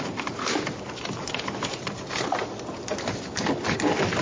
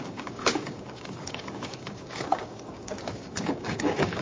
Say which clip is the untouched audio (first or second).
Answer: first